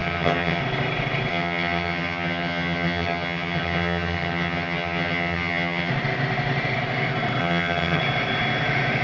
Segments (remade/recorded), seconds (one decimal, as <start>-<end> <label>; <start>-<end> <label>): 0.0-0.6 remade; 0.6-1.3 recorded; 1.3-5.9 remade; 5.9-7.4 recorded; 7.4-8.0 remade; 8.0-9.0 recorded